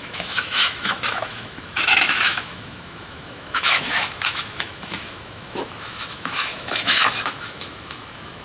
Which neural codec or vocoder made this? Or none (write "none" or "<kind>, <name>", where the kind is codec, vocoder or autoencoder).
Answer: autoencoder, DAC-VAE